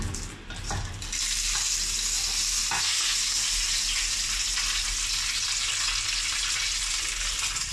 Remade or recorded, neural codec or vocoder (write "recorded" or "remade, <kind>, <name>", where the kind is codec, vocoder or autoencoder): recorded